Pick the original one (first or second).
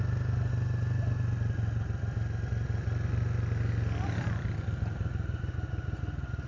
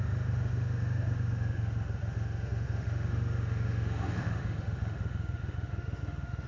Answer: first